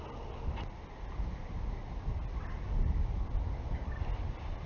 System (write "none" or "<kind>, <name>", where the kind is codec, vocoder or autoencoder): none